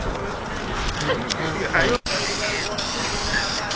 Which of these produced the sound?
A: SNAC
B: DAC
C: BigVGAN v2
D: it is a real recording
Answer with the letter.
D